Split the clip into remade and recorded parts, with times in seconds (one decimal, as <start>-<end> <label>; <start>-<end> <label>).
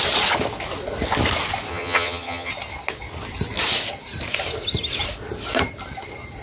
0.0-1.7 recorded; 1.7-2.5 remade; 2.5-6.4 recorded